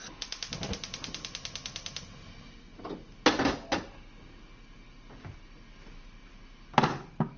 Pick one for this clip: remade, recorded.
recorded